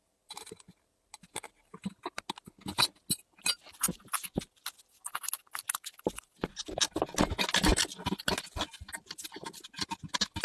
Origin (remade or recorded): recorded